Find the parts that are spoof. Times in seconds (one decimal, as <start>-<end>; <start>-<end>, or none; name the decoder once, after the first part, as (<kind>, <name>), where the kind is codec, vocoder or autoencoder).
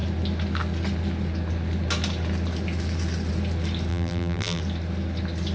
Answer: 3.9-4.6 (vocoder, BigVGAN v2)